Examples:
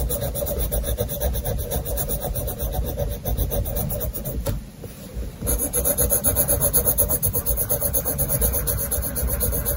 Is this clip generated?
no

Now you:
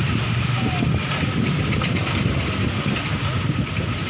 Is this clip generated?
no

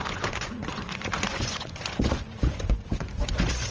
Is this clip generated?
yes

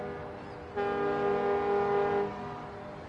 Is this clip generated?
no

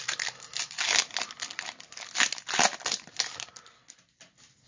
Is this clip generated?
no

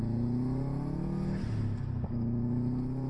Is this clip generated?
no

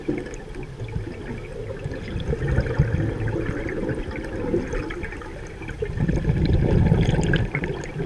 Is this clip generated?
no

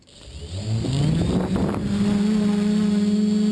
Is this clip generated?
no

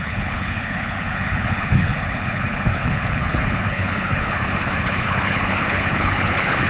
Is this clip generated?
yes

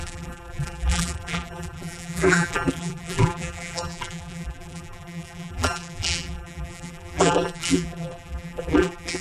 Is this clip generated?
yes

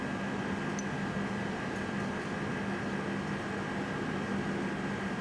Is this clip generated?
no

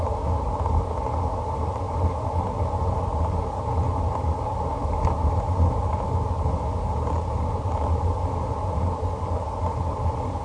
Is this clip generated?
no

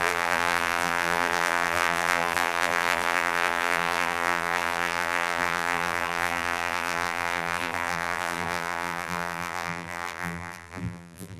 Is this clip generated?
yes